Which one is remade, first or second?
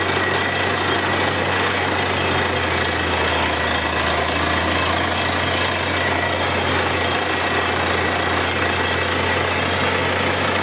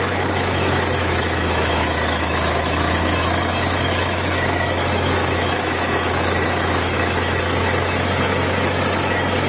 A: second